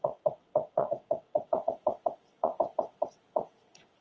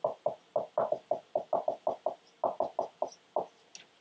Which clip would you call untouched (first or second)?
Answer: second